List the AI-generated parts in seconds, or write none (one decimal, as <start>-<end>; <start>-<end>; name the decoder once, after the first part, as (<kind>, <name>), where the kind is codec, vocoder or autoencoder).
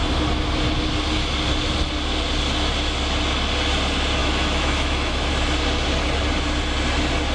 4.2-5.3 (autoencoder, DAC-VAE)